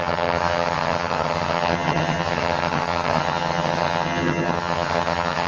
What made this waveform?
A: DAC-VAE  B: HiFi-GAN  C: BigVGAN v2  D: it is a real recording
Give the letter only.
B